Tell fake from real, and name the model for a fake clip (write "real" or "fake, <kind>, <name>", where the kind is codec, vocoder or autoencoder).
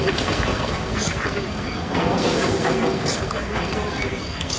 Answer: fake, codec, SNAC